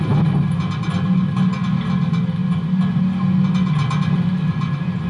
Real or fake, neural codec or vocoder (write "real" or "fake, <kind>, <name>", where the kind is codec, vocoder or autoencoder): real